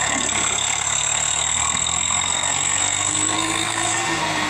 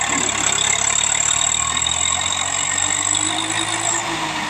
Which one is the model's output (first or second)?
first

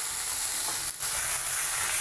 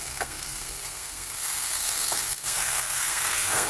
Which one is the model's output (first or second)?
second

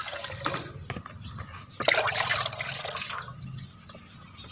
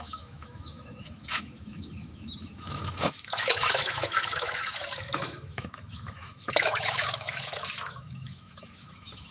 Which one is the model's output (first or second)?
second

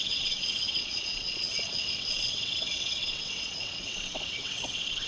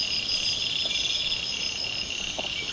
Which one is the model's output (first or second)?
first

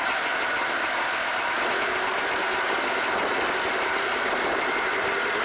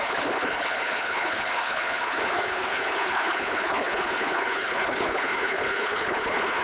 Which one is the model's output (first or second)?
second